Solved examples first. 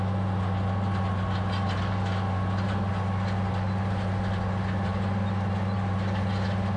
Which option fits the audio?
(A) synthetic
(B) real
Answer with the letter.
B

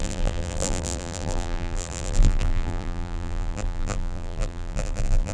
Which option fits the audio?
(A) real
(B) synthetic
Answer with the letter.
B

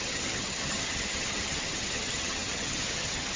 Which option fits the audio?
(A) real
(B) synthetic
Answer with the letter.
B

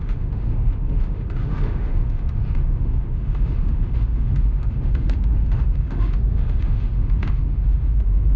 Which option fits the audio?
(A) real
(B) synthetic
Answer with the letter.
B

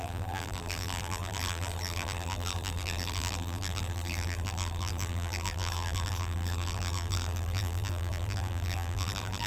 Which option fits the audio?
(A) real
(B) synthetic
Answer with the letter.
B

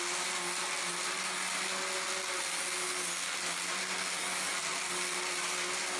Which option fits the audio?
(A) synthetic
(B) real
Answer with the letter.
B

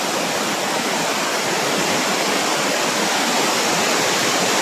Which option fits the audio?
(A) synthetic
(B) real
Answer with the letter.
B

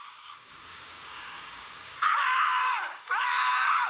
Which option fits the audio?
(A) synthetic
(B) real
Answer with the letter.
A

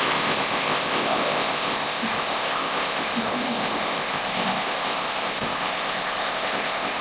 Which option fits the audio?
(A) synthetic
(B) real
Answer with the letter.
A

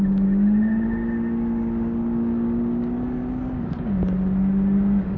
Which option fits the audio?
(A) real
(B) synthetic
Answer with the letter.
A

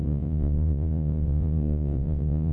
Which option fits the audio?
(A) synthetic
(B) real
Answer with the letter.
A